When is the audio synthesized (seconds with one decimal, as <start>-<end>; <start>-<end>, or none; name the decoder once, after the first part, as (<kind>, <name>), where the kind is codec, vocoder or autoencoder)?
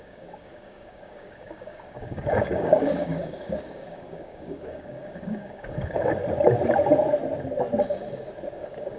0.0-6.2 (codec, DAC); 8.5-9.0